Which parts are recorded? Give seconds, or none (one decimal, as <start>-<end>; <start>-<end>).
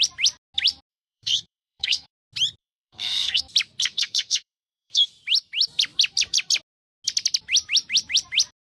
0.0-0.9; 2.1-2.6; 3.4-3.8; 5.1-8.7